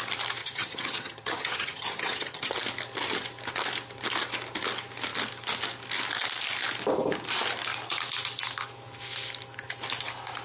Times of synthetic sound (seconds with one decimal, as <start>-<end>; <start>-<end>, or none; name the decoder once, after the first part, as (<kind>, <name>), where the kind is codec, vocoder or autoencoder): 0.4-2.5 (vocoder, HiFi-GAN)

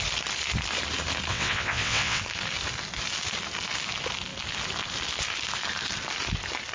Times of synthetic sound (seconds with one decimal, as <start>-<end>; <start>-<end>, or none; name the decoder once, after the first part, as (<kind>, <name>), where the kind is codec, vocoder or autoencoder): 1.3-2.2 (vocoder, WaveNeXt)